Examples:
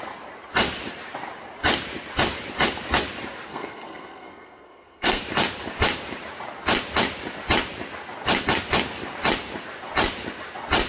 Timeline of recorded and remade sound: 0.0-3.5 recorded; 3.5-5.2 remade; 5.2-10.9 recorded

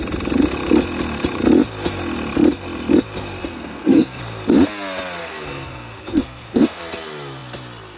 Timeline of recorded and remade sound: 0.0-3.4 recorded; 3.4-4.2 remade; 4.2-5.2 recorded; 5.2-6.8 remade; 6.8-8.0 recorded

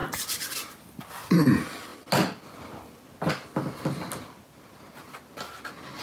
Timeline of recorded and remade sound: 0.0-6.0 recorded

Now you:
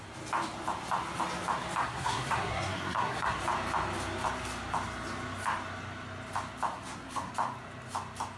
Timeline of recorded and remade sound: 0.0-1.8 recorded; 1.8-3.4 remade; 3.4-6.7 recorded; 6.7-7.3 remade; 7.3-8.4 recorded